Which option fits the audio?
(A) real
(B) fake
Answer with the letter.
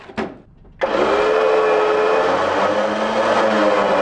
A